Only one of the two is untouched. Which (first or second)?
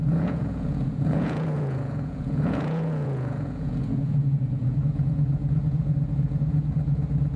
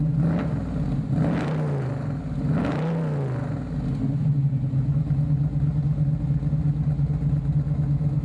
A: second